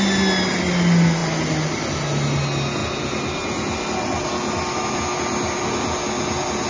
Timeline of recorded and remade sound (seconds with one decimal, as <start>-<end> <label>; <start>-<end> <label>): 0.0-6.7 recorded